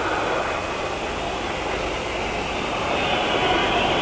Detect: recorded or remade recorded